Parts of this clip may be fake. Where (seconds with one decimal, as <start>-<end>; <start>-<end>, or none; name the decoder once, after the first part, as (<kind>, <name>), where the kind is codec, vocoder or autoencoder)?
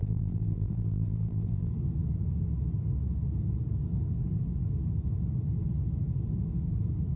0.0-1.7 (vocoder, BigVGAN v2)